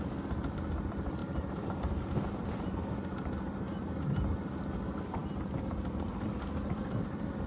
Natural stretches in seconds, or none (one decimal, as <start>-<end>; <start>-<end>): 0.0-1.2; 2.7-7.5